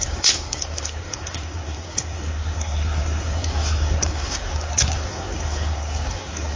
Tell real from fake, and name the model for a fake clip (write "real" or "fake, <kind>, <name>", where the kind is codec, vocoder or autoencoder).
fake, codec, SNAC